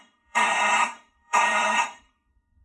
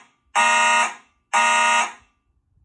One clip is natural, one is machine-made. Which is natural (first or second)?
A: second